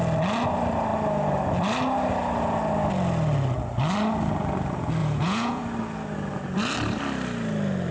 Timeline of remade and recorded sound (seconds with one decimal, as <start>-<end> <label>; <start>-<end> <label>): 0.0-5.0 recorded; 5.0-5.6 remade; 5.6-7.9 recorded